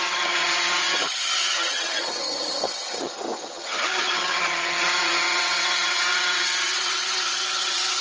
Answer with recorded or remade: remade